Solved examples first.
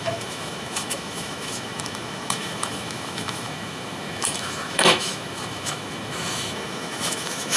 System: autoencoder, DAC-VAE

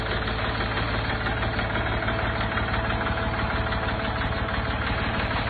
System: none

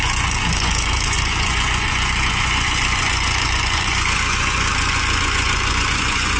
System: vocoder, Vocos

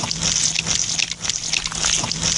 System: none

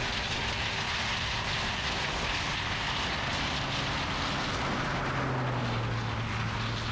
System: none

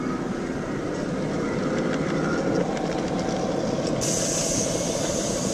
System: none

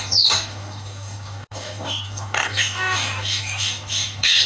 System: codec, DAC